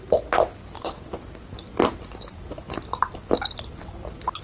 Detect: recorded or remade recorded